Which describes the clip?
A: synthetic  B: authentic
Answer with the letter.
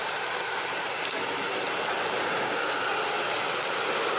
B